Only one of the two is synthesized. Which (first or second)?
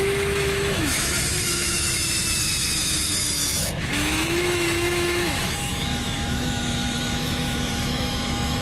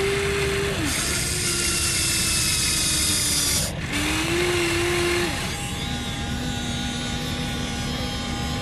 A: first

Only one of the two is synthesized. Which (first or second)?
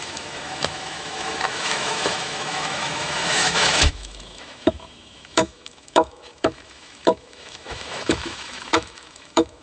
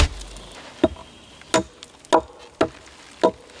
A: first